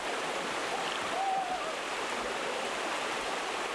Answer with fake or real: real